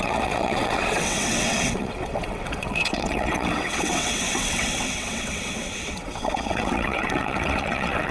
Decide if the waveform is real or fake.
fake